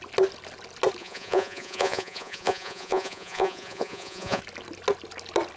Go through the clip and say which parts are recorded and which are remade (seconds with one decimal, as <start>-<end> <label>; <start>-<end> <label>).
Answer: 0.0-1.0 recorded; 1.0-4.4 remade; 4.4-5.6 recorded